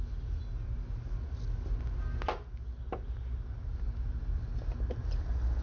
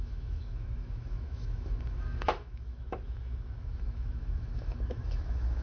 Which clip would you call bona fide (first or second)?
first